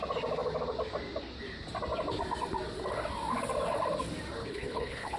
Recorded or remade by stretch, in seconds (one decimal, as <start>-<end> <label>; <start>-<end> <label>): 0.0-4.4 recorded; 4.4-5.2 remade